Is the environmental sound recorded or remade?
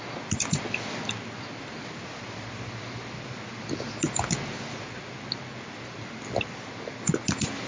recorded